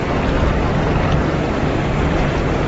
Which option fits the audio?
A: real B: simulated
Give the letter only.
B